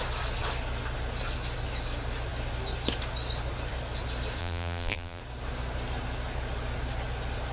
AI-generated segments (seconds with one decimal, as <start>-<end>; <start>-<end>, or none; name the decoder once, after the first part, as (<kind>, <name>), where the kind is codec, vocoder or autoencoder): 4.4-5.2 (vocoder, BigVGAN v2)